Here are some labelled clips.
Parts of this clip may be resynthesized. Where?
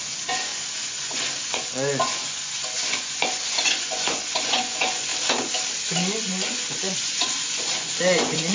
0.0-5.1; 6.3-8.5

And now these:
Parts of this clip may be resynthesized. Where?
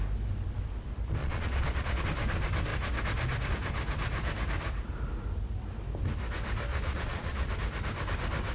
1.2-2.0; 6.7-7.5